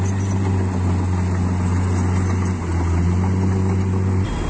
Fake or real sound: real